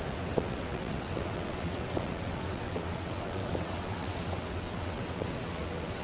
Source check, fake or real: fake